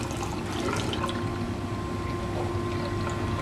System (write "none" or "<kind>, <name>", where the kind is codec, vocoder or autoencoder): none